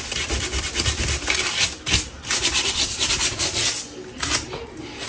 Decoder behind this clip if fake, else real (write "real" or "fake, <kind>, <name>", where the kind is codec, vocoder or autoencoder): real